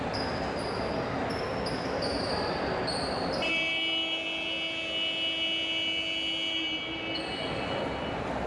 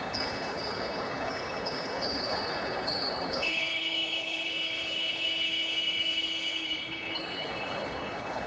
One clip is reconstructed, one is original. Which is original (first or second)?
first